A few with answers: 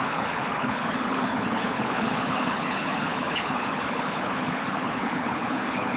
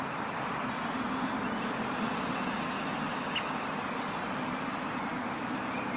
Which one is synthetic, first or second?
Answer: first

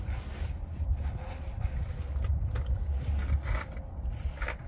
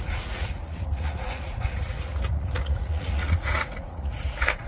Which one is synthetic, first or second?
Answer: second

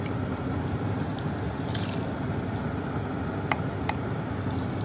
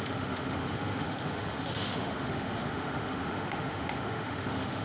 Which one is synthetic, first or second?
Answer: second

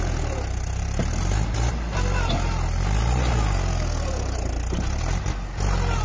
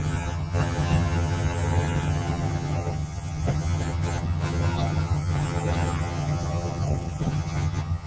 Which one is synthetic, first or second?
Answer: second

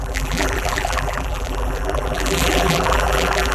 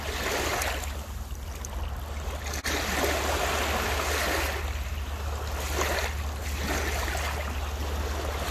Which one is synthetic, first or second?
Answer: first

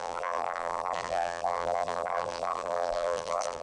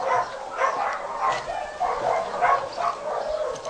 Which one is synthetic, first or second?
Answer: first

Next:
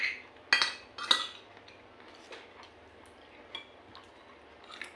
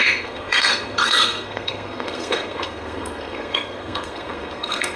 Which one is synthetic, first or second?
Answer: second